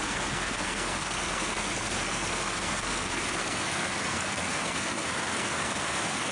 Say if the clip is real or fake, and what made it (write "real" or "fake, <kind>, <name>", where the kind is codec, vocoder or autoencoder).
fake, codec, SNAC